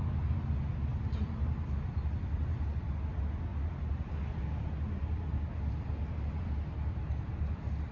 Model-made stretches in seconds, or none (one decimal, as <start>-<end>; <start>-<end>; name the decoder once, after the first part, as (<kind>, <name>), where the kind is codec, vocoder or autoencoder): 0.9-2.6 (vocoder, BigVGAN v2)